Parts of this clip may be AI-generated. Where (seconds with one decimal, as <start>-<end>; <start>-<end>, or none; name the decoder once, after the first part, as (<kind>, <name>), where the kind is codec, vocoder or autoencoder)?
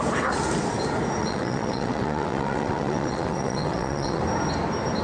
1.2-4.2 (vocoder, WaveNeXt)